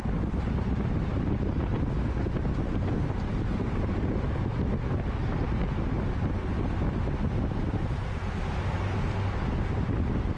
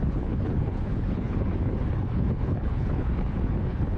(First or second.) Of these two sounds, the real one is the first